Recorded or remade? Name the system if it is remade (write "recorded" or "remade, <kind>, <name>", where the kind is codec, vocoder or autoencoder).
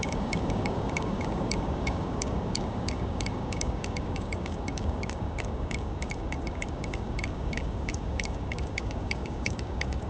remade, codec, DAC